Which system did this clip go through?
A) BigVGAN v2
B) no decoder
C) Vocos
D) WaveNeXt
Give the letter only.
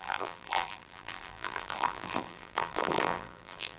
A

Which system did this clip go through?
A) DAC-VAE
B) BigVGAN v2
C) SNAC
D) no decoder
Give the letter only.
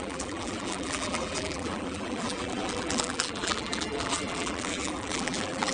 B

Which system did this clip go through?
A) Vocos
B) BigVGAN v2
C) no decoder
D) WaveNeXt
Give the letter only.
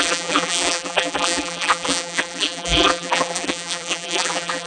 B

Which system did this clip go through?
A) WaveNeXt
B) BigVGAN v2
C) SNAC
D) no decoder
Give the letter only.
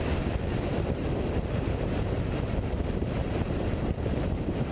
B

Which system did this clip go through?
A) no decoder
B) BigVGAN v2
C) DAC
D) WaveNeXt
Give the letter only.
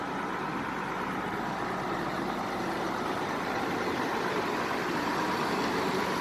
B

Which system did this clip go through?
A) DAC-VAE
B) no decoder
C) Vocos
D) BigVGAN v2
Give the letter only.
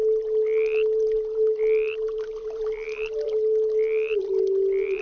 B